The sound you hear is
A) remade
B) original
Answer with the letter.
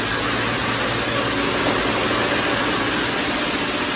B